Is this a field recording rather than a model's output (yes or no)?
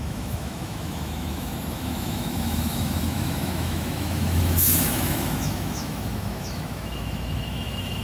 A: no